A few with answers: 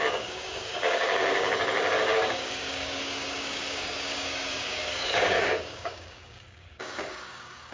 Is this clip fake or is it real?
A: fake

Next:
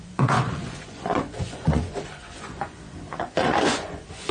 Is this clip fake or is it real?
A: fake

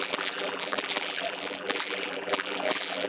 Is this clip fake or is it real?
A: fake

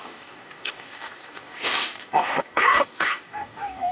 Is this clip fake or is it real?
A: fake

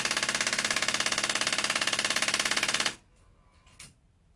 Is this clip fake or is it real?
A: real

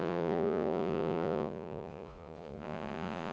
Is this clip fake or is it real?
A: fake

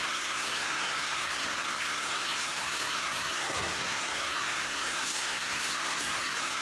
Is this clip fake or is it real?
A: fake